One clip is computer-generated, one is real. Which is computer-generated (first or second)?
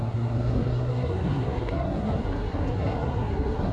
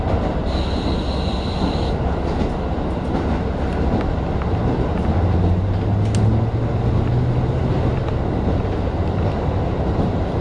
first